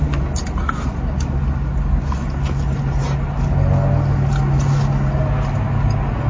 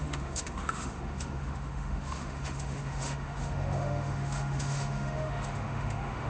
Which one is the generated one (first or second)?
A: second